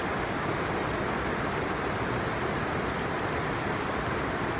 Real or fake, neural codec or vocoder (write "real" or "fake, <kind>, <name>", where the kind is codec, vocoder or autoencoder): real